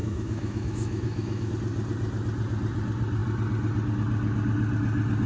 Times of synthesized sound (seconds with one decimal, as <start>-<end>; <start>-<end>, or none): 0.0-1.5